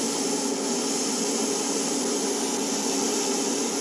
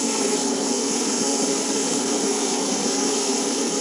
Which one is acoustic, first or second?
first